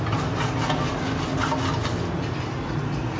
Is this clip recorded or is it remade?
recorded